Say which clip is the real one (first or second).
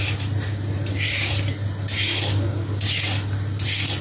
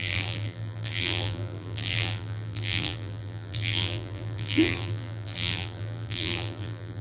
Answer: first